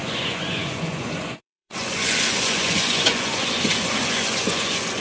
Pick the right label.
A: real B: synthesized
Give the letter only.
B